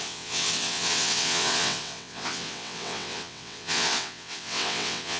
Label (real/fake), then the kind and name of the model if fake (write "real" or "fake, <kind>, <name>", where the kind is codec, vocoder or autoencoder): fake, vocoder, WaveNeXt